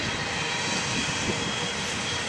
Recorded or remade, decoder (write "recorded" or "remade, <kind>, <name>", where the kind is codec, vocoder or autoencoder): recorded